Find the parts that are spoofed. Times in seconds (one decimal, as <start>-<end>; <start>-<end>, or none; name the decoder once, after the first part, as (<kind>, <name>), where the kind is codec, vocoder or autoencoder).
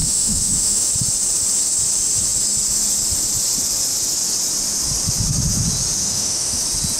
0.0-0.9 (autoencoder, DAC-VAE); 6.0-6.6